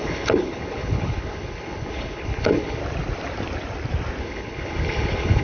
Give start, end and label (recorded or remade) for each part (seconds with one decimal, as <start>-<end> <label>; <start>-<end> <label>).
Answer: 0.0-2.8 remade; 2.8-4.2 recorded; 4.2-5.4 remade